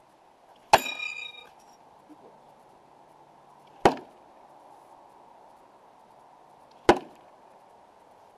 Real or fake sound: real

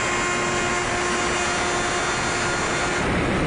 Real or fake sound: real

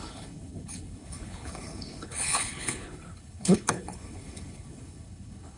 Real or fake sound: fake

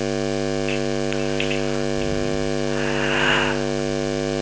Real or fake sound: real